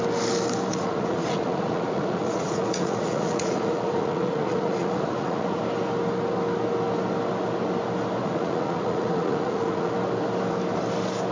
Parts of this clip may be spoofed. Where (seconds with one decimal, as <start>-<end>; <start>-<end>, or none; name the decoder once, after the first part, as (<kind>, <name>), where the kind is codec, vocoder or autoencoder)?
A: 0.7-5.6 (vocoder, Vocos); 8.2-9.9